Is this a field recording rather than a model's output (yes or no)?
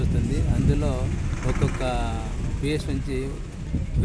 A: yes